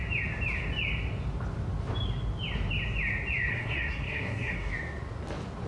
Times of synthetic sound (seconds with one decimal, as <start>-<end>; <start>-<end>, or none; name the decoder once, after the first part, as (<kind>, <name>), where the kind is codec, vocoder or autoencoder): 3.5-4.7 (codec, SNAC)